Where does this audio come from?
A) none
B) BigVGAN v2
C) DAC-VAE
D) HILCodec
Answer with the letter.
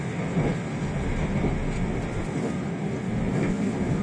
A